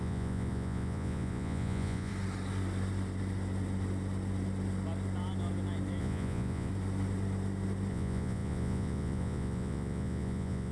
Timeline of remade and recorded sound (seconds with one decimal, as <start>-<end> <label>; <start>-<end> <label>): 0.0-2.1 remade; 2.1-6.0 recorded; 6.0-6.7 remade; 6.7-7.9 recorded; 7.9-10.7 remade